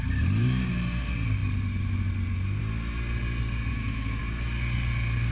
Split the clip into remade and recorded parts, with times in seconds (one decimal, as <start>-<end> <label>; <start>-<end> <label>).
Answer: 0.0-3.7 recorded; 3.7-4.2 remade; 4.2-5.3 recorded